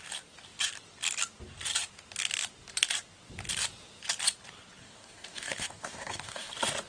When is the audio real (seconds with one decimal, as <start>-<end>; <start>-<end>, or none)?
0.0-4.8; 6.5-6.9